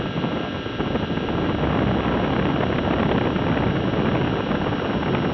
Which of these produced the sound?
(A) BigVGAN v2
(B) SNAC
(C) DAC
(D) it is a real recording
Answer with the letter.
D